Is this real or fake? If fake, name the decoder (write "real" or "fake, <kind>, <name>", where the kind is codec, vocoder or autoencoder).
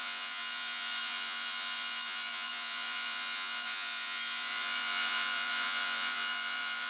fake, vocoder, Vocos